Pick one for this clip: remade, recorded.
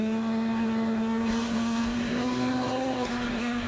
remade